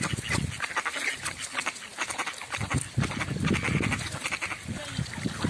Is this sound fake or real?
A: real